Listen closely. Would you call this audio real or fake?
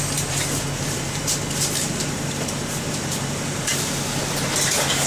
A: fake